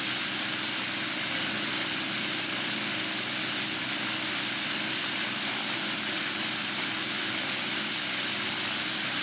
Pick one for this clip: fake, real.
real